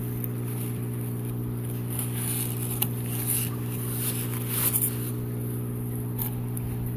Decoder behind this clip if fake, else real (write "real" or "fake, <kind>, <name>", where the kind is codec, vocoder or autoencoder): real